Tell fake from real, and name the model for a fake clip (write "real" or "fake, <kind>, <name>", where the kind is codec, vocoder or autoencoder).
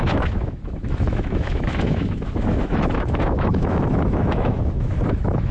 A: fake, autoencoder, DAC-VAE